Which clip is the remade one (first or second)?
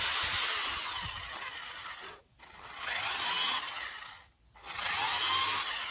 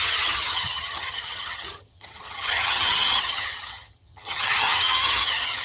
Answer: second